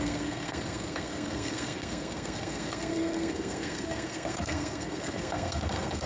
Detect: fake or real fake